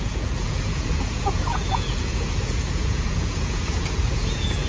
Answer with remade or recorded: remade